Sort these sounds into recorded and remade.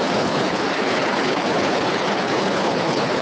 remade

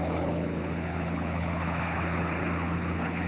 remade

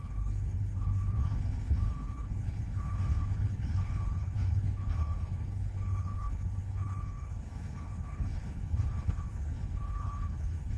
remade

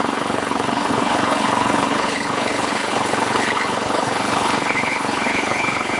remade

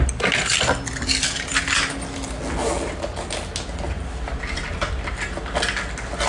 recorded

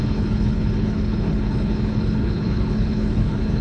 remade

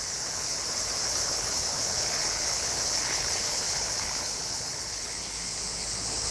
remade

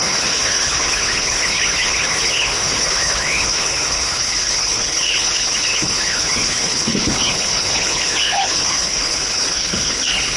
remade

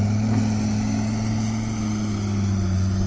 recorded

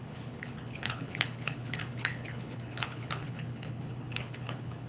remade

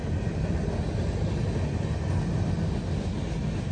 recorded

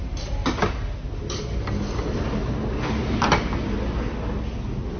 recorded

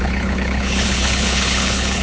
remade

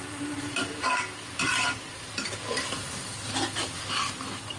recorded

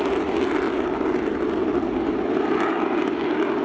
recorded